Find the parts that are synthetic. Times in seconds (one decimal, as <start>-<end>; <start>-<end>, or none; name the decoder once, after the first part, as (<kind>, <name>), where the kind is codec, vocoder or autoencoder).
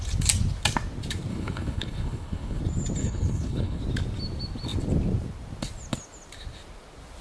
1.3-2.6 (codec, HILCodec); 3.0-3.8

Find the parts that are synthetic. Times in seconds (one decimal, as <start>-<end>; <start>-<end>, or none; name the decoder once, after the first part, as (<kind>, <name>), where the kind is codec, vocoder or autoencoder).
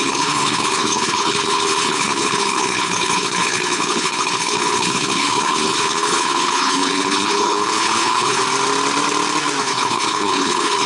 0.0-8.4 (codec, HILCodec); 9.6-10.9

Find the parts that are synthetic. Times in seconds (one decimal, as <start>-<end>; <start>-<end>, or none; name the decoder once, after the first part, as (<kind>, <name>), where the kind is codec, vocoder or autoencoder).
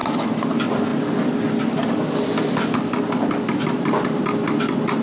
none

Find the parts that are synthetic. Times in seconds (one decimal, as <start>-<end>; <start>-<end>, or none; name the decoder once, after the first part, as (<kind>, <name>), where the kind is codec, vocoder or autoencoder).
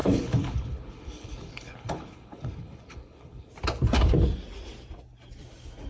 0.0-3.5 (codec, HILCodec)